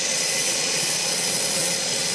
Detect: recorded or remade remade